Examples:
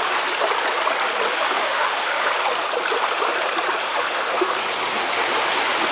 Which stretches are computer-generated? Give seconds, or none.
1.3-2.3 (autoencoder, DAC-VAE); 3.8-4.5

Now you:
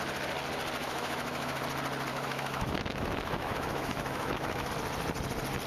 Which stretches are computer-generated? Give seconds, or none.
0.8-1.6 (autoencoder, DAC-VAE); 2.1-4.7

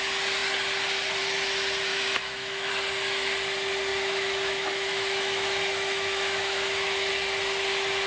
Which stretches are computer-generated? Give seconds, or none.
1.9-2.7 (autoencoder, DAC-VAE); 3.9-7.1

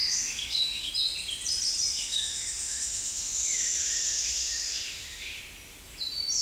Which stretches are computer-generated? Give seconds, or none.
0.0-0.9 (autoencoder, DAC-VAE); 1.9-5.4

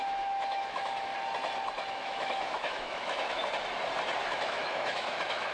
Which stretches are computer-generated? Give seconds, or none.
0.0-1.1 (autoencoder, DAC-VAE); 1.9-3.4; 4.2-5.5

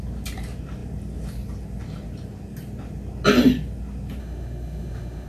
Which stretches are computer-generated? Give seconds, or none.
4.2-5.3 (autoencoder, DAC-VAE)